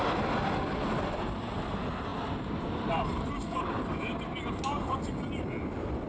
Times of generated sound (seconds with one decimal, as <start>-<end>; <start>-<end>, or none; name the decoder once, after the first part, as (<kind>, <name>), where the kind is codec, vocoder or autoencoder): none